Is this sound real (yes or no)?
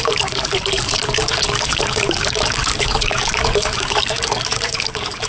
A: no